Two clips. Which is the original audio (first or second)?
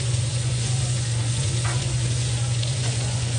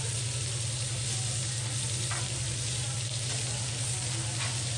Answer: second